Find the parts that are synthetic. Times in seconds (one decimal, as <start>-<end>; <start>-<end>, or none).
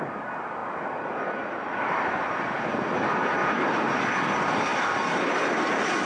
3.4-4.0; 4.7-5.6